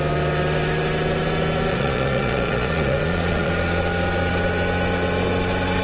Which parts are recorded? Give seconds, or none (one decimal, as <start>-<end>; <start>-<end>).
0.0-1.7; 3.5-5.8